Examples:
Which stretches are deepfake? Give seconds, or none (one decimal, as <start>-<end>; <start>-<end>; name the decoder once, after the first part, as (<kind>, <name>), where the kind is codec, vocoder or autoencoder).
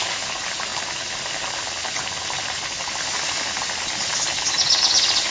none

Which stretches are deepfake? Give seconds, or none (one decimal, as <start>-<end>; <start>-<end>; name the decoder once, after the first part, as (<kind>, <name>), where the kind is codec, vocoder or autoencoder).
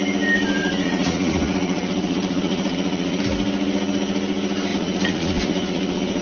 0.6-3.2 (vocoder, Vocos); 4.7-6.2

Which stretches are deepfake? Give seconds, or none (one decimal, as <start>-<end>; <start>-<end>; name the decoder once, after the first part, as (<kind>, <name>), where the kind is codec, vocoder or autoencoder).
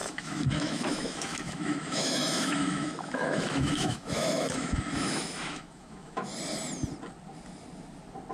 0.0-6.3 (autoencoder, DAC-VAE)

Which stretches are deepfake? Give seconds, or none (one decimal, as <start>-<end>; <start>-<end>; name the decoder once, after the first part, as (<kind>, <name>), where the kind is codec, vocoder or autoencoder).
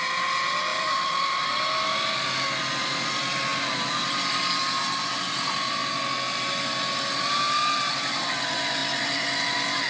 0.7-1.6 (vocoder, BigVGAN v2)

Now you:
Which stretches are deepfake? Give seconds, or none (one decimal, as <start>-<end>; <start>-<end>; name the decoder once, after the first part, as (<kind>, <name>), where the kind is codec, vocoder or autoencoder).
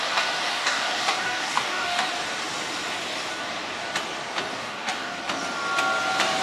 0.5-2.1 (codec, DAC); 4.5-5.2